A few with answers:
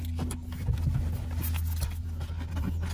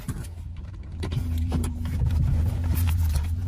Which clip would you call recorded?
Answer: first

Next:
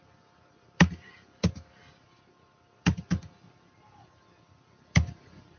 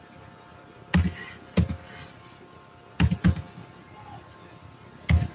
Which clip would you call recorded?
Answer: second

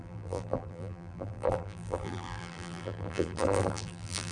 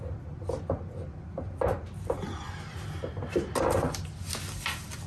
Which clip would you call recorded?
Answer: second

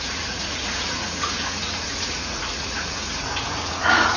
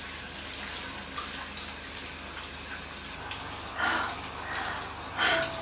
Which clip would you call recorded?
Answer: second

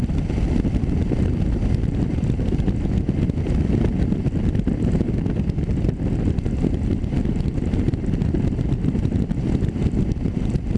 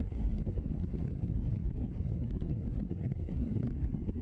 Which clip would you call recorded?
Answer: first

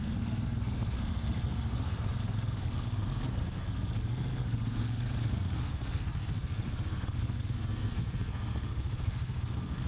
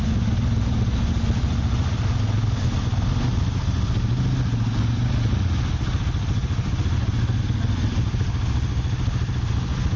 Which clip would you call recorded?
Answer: second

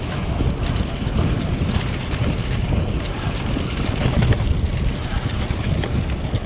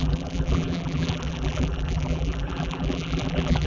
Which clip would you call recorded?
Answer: first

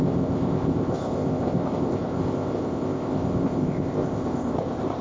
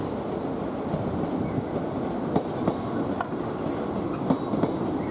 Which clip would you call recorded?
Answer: second